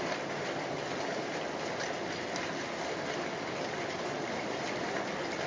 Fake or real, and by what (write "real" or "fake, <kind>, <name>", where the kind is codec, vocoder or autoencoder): real